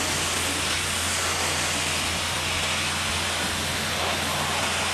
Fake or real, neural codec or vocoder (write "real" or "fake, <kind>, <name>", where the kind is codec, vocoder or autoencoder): real